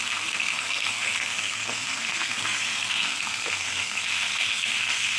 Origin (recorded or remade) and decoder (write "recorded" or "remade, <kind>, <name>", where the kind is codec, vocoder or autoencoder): remade, codec, SNAC